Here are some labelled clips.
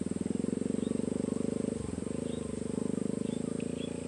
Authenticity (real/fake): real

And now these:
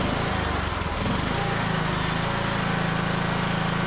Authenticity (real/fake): real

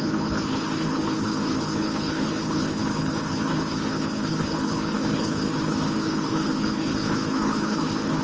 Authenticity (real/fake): fake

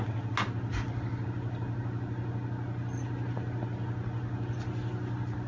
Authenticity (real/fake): real